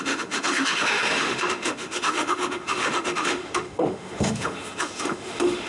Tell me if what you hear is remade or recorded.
remade